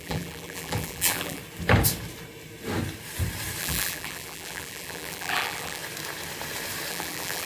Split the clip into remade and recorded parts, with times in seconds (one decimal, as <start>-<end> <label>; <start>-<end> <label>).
0.0-1.4 remade; 1.4-3.6 recorded; 3.6-5.8 remade; 5.8-6.9 recorded; 6.9-7.5 remade